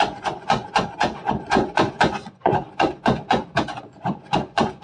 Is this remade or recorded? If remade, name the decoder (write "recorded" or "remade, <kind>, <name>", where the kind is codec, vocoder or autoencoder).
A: remade, vocoder, Vocos